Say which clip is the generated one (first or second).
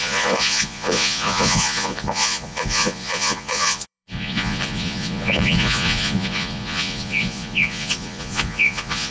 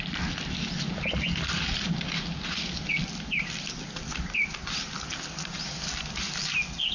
first